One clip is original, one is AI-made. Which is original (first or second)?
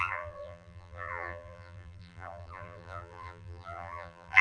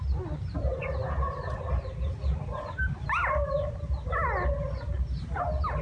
second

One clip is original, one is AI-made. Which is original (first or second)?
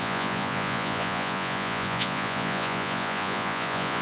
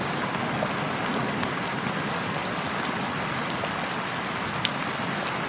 second